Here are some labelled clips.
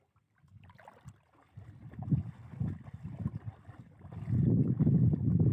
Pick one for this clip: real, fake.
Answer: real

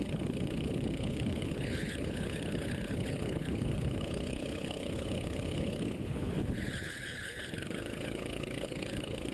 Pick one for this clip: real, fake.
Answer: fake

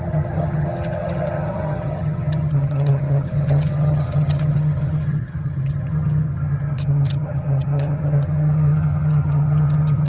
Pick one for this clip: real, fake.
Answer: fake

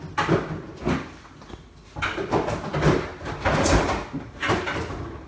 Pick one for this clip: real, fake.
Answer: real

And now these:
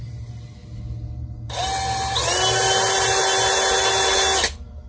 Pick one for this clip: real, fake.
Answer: real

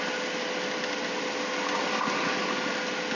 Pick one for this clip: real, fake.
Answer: real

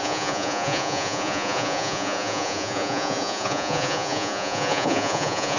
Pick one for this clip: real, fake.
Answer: fake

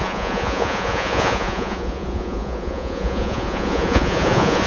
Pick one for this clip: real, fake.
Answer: fake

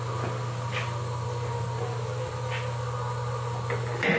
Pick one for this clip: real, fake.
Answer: real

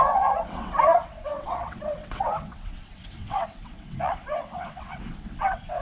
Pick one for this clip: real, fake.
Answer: fake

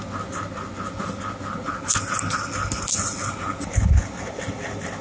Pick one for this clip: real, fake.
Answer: real